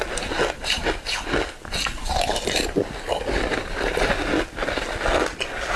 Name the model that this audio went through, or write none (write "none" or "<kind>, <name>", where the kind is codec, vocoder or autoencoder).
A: none